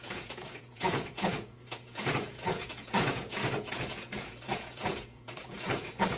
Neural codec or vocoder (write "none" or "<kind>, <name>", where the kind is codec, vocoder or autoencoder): vocoder, Vocos